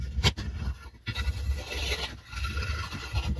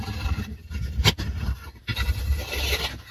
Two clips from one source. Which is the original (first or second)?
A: first